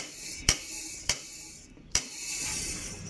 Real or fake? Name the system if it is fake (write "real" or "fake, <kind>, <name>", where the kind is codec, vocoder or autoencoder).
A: fake, vocoder, BigVGAN v2